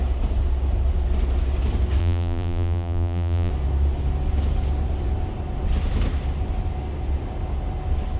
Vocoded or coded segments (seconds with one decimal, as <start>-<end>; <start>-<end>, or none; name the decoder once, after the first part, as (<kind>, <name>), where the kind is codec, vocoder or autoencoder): 2.0-3.5 (vocoder, BigVGAN v2)

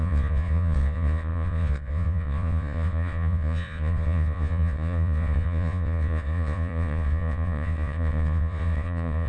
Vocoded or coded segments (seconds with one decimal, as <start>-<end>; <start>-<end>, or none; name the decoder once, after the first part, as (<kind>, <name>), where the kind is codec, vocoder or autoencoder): 0.0-9.3 (vocoder, Vocos)

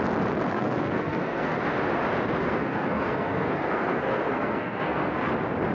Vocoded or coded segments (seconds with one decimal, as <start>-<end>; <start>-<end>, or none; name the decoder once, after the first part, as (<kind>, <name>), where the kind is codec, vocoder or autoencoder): 0.5-1.6 (codec, SNAC); 2.4-5.3

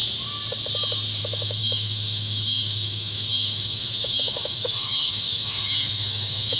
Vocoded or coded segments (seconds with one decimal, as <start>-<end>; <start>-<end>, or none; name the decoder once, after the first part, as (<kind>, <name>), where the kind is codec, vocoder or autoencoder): 1.2-6.6 (autoencoder, DAC-VAE)

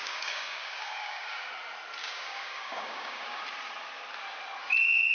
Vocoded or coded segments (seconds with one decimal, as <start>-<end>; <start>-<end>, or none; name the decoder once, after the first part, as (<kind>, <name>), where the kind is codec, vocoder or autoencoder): 0.0-1.5 (codec, DAC); 2.0-3.4

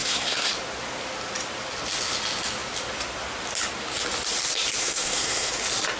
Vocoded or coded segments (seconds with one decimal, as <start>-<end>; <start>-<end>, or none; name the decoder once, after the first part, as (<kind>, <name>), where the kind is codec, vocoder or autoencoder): 0.0-0.5 (codec, SNAC); 4.8-5.5